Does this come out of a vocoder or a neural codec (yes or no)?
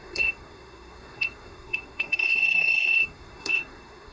yes